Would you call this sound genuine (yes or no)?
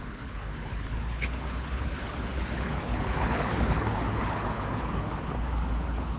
no